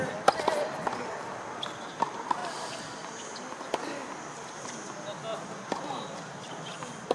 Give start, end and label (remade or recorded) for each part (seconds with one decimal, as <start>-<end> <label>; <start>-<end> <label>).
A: 0.0-7.1 recorded